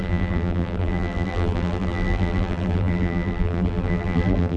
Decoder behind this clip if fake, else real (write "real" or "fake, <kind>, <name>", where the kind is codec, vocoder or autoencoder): fake, vocoder, BigVGAN v2